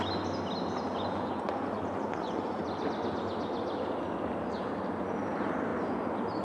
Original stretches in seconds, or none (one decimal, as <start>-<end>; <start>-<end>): 0.0-0.9; 2.6-6.4